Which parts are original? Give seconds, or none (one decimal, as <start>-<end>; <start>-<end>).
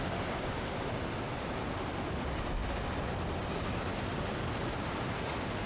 0.0-5.7